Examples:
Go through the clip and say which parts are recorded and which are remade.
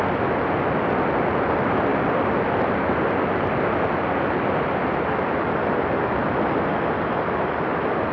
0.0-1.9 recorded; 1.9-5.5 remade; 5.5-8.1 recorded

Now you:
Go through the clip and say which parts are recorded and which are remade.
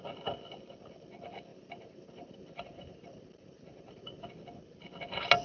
0.0-1.5 recorded; 1.5-4.3 remade; 4.3-5.4 recorded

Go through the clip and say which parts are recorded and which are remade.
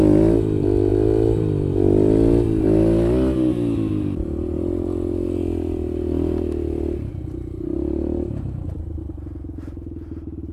0.0-7.1 recorded; 7.1-9.0 remade; 9.0-10.5 recorded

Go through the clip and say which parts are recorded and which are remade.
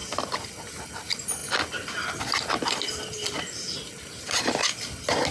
0.0-5.3 recorded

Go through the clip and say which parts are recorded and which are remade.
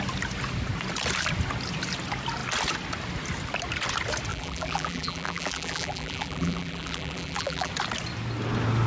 0.0-4.3 recorded; 4.3-7.7 remade; 7.7-8.9 recorded